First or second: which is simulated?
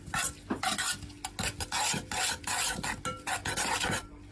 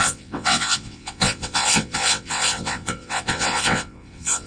second